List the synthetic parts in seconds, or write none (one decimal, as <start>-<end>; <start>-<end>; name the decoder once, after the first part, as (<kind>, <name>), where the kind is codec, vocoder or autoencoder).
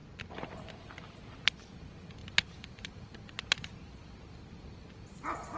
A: none